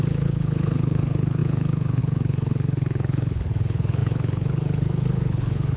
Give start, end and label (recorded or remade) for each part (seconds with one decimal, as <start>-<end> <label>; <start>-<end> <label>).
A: 0.0-5.8 remade